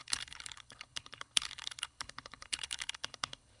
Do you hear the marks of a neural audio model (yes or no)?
yes